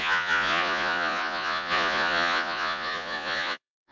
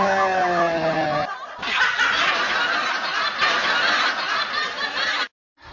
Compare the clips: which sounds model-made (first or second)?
first